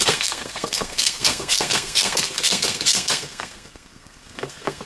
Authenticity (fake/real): fake